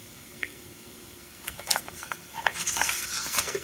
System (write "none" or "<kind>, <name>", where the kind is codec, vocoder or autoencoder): codec, SNAC